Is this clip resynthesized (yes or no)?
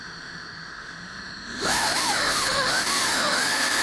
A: yes